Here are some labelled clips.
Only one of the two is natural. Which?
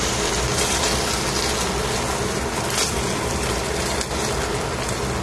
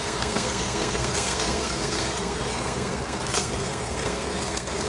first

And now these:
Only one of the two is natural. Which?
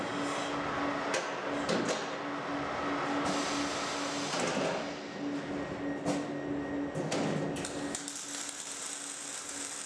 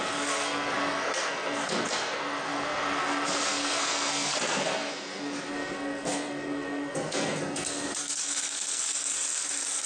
first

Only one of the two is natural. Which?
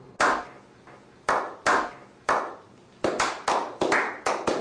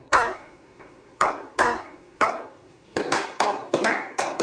first